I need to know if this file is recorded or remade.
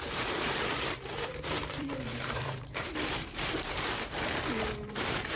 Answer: remade